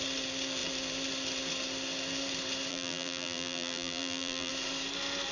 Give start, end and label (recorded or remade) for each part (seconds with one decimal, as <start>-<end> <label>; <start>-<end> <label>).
0.0-2.7 recorded; 2.7-4.5 remade; 4.5-5.3 recorded

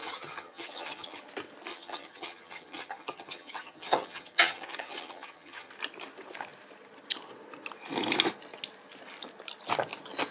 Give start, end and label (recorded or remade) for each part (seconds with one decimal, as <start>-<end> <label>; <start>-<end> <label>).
0.0-1.2 remade; 1.2-1.7 recorded; 1.7-5.7 remade; 5.7-10.3 recorded

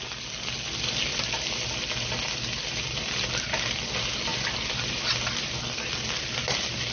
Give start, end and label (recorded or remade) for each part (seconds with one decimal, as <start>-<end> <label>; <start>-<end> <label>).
0.0-6.9 recorded

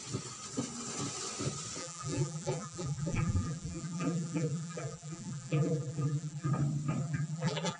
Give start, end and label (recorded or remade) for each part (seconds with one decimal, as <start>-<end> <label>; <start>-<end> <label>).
0.0-1.8 recorded; 1.8-6.5 remade; 6.5-7.0 recorded; 7.0-7.8 remade